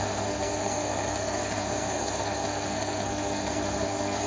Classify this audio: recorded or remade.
remade